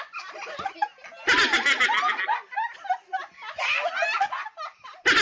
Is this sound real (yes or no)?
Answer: yes